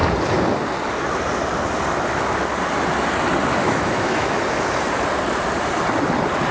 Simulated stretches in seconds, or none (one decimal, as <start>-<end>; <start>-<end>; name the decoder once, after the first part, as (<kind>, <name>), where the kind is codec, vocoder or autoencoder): 3.6-4.4 (autoencoder, DAC-VAE)